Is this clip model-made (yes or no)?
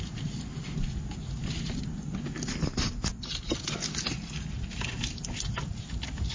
no